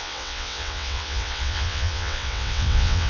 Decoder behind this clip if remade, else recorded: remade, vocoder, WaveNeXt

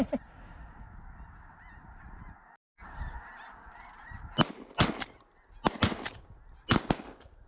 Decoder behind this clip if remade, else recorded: recorded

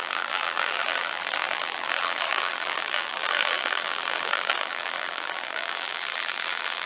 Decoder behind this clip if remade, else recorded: remade, vocoder, BigVGAN v2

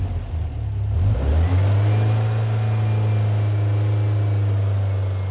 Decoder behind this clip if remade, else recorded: recorded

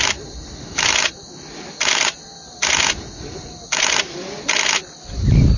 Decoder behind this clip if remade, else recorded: recorded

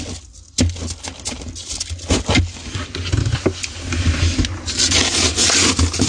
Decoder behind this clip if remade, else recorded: recorded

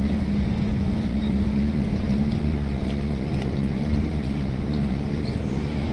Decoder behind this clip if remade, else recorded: remade, vocoder, Vocos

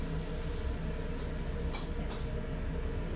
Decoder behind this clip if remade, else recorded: recorded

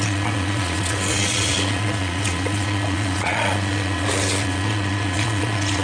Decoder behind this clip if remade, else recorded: remade, vocoder, Vocos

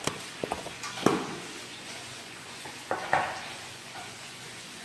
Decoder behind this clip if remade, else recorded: remade, vocoder, Vocos